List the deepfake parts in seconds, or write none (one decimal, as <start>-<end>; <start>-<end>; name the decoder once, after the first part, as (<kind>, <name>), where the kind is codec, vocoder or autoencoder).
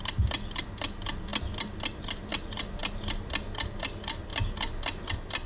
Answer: none